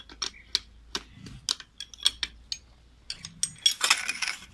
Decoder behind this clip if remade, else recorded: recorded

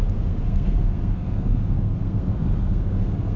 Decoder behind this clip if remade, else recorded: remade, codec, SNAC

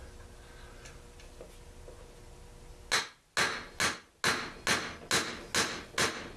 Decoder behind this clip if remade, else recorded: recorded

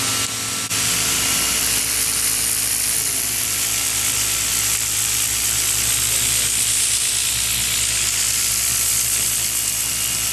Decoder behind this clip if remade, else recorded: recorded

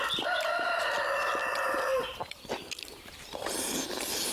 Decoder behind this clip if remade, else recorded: recorded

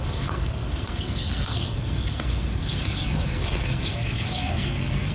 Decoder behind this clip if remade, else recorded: remade, codec, SNAC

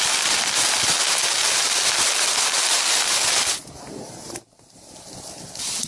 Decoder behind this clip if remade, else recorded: recorded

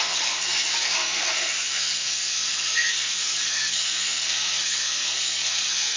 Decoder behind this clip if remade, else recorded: remade, codec, SNAC